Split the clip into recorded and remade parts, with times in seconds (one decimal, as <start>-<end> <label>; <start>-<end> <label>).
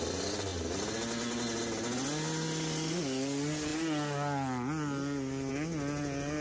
0.0-6.4 recorded